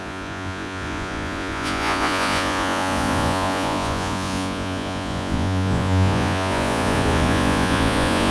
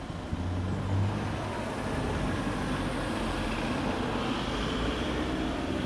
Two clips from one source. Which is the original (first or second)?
second